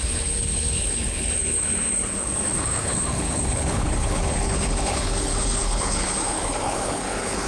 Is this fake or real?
fake